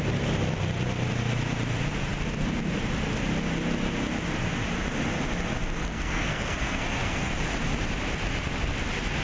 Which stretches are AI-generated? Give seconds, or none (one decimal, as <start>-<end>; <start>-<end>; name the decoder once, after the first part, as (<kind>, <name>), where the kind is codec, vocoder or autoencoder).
5.8-7.3 (codec, SNAC)